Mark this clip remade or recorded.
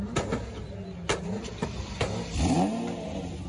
recorded